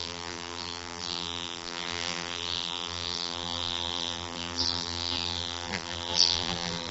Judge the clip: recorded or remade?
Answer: remade